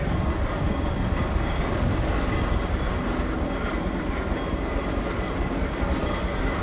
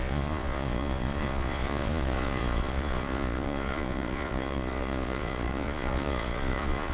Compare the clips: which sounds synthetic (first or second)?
second